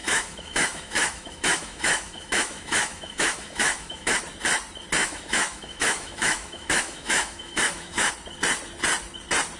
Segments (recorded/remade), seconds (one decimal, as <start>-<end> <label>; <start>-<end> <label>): 0.0-4.2 remade; 4.2-5.0 recorded; 5.0-8.1 remade; 8.1-9.6 recorded